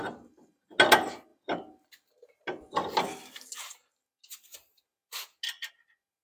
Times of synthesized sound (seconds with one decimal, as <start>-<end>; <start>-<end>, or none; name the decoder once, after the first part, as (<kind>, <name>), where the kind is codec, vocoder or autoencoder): none